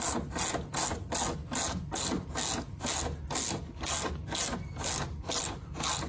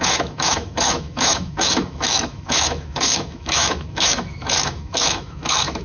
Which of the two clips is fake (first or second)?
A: second